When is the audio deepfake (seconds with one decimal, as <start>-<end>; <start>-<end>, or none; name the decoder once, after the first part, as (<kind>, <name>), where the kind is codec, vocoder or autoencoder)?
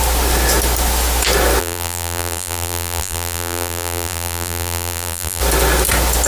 1.6-5.4 (vocoder, BigVGAN v2)